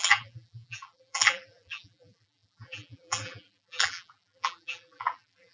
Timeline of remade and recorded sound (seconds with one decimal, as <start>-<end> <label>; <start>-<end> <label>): 0.0-5.5 remade

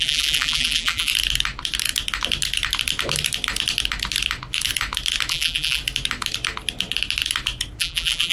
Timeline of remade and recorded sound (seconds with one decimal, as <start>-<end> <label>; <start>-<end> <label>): 0.0-1.1 remade; 1.1-5.3 recorded; 5.3-5.8 remade; 5.8-7.8 recorded; 7.8-8.3 remade

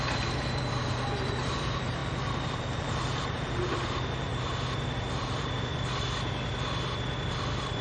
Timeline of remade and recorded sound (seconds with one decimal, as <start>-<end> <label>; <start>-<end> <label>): 0.0-4.3 remade; 4.3-5.0 recorded; 5.0-5.7 remade; 5.7-7.3 recorded; 7.3-7.8 remade

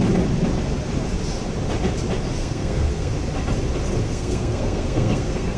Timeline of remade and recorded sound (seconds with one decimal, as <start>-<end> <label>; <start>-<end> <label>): 0.0-2.4 recorded; 2.4-3.1 remade; 3.1-4.0 recorded; 4.0-5.6 remade